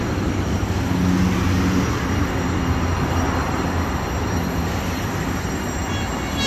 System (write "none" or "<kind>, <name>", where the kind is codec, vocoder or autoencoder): none